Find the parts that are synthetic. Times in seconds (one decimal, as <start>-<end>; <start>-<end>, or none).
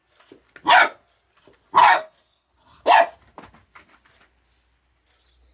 1.8-2.5